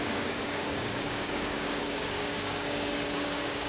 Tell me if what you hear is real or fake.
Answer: fake